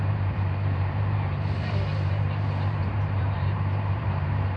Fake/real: fake